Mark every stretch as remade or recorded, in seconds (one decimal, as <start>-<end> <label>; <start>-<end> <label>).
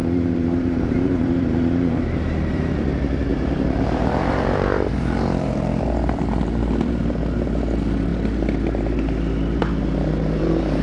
0.0-2.7 remade; 2.7-3.3 recorded; 3.3-6.9 remade; 6.9-10.8 recorded